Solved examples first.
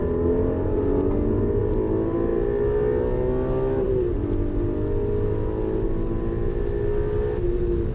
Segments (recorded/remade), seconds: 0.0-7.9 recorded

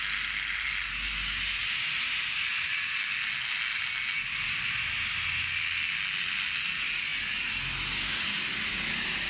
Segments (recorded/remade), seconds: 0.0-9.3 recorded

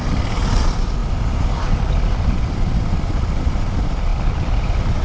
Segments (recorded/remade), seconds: 0.0-5.0 recorded

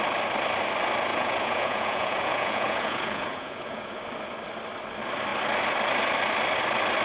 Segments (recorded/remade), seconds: 0.0-1.1 recorded; 1.1-4.0 remade; 4.0-7.0 recorded

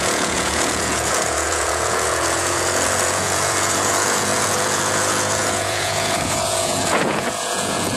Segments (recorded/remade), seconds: 0.0-8.0 remade